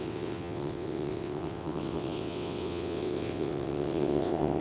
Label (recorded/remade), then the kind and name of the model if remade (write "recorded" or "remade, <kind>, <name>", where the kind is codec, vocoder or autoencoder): remade, vocoder, WaveNeXt